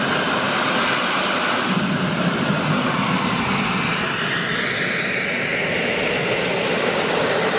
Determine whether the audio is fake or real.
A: real